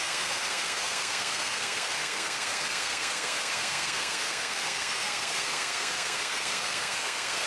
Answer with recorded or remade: remade